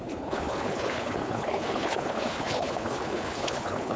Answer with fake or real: fake